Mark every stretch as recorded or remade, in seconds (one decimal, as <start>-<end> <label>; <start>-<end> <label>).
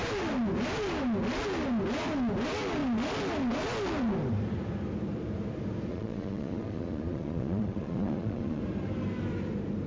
0.0-5.9 recorded; 5.9-8.6 remade; 8.6-9.9 recorded